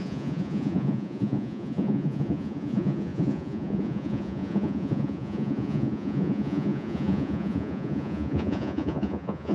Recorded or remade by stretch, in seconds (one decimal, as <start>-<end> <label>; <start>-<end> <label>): 0.0-9.5 remade